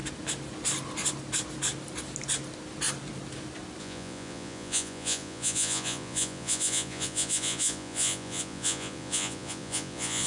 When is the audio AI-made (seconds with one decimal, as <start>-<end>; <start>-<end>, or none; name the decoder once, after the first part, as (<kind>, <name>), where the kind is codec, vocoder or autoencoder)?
3.8-10.3 (vocoder, Vocos)